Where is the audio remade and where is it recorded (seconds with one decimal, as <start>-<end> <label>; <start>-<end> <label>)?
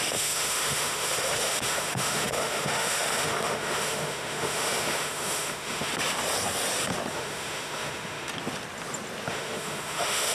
0.0-5.9 remade; 5.9-7.1 recorded; 7.1-8.3 remade; 8.3-9.3 recorded; 9.3-10.3 remade